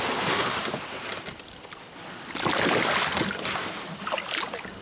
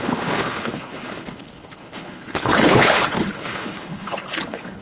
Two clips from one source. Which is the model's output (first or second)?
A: second